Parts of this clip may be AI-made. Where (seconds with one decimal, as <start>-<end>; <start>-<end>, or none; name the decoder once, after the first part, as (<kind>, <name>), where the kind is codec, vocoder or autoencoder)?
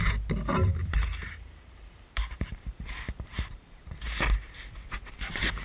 0.8-4.2 (vocoder, BigVGAN v2)